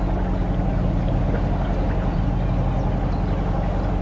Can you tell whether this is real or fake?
real